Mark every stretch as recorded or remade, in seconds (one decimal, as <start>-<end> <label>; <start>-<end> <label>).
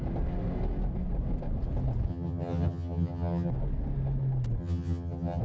0.0-2.1 recorded; 2.1-3.5 remade; 3.5-4.6 recorded; 4.6-5.4 remade